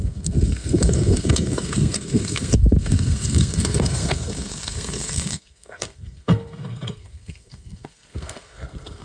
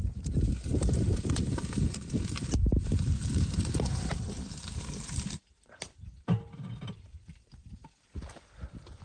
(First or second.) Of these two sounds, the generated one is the first